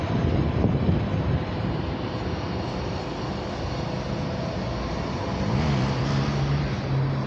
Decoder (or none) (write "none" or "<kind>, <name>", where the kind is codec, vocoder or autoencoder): none